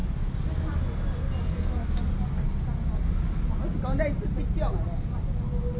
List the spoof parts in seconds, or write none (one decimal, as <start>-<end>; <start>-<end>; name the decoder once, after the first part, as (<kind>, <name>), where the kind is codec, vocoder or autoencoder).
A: none

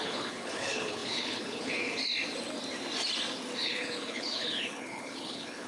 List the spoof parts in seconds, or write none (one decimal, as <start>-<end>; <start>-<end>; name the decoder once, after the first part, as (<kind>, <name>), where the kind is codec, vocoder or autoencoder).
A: 0.0-2.0 (codec, HILCodec); 3.6-5.7

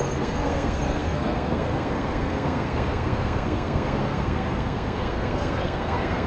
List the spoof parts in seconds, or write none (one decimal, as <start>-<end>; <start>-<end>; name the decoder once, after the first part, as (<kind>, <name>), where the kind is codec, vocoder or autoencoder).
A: 0.0-6.3 (codec, SNAC)

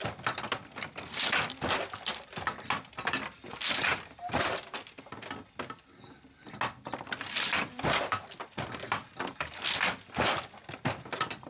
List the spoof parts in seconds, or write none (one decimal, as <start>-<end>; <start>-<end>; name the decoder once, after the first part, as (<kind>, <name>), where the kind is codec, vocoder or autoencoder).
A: none

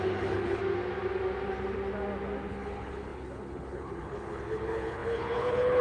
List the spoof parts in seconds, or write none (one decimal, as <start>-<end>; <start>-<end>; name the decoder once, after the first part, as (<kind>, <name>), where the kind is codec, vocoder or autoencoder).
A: 0.0-0.6 (codec, HILCodec); 2.5-5.8

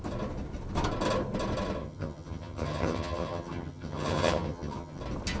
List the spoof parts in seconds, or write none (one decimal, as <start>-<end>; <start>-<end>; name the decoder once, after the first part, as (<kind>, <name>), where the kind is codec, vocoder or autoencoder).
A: 1.8-5.0 (vocoder, HiFi-GAN)

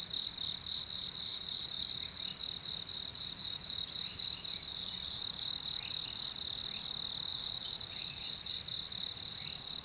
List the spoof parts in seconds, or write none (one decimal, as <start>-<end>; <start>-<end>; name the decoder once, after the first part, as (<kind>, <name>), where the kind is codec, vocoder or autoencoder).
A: 1.3-1.9 (vocoder, BigVGAN v2); 3.1-5.2; 7.3-8.5